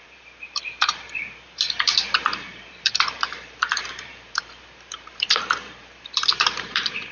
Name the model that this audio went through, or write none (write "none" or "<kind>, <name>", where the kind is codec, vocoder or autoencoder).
vocoder, BigVGAN v2